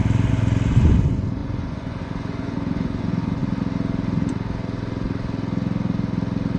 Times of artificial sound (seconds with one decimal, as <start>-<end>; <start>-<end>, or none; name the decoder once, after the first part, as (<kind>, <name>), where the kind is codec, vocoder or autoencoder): 0.7-3.4 (vocoder, Vocos)